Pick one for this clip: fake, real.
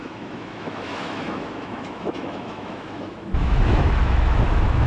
fake